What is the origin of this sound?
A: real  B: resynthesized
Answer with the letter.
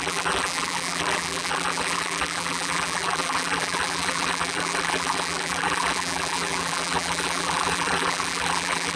B